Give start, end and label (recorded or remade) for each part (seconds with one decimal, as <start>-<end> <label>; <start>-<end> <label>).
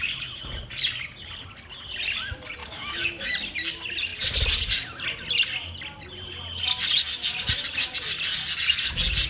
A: 0.0-2.6 recorded; 2.6-3.3 remade; 3.3-9.3 recorded